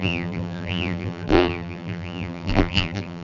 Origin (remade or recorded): remade